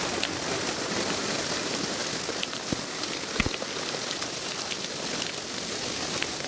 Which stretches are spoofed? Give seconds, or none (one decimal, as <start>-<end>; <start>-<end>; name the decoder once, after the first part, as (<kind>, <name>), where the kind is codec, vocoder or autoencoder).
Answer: 1.2-3.4 (vocoder, BigVGAN v2)